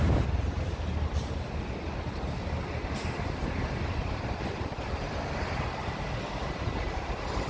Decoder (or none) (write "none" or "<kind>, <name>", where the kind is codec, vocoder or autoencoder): none